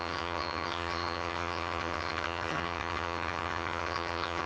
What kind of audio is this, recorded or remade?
remade